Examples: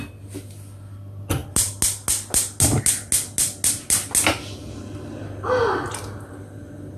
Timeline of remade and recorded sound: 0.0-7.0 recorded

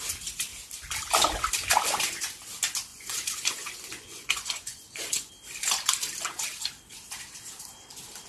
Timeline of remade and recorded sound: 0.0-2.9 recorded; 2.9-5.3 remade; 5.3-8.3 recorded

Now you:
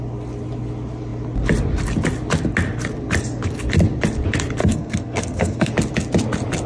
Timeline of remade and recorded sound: 0.0-4.6 recorded; 4.6-5.7 remade; 5.7-6.7 recorded

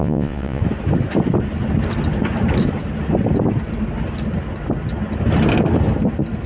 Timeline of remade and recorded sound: 0.0-0.6 remade; 0.6-6.5 recorded